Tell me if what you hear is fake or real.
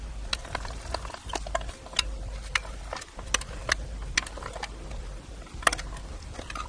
real